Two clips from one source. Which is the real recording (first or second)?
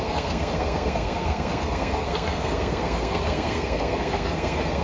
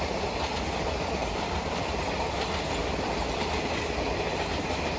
second